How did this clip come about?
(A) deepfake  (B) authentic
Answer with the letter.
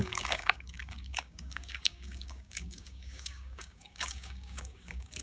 A